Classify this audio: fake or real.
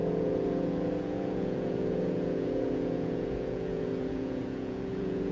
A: fake